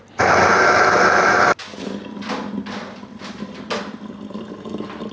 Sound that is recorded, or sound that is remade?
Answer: recorded